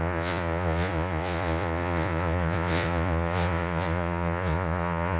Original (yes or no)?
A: no